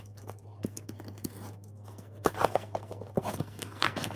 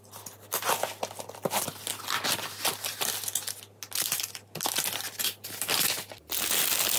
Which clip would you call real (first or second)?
second